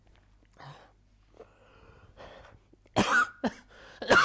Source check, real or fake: real